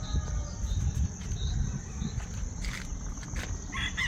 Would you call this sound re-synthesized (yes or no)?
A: no